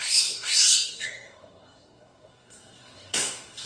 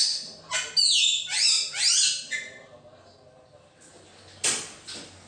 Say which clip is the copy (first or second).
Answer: first